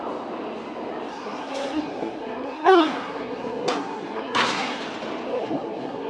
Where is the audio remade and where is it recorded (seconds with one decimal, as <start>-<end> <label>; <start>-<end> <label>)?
0.0-1.1 recorded; 1.1-4.8 remade; 4.8-5.3 recorded; 5.3-6.1 remade